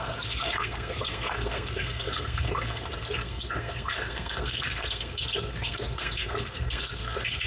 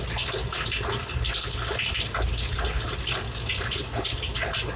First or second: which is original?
second